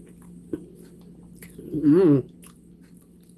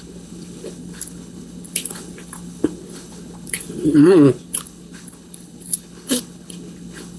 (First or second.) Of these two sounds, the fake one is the second